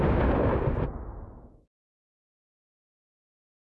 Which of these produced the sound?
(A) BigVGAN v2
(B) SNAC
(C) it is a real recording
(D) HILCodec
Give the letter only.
C